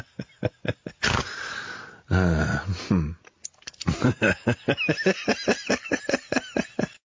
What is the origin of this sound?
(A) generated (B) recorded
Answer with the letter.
B